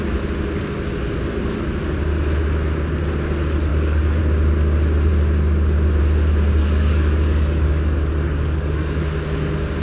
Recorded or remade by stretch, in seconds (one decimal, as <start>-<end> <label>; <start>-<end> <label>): 0.0-3.7 recorded; 3.7-4.2 remade; 4.2-6.6 recorded; 6.6-9.0 remade; 9.0-9.8 recorded